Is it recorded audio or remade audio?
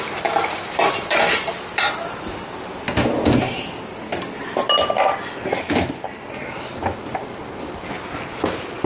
recorded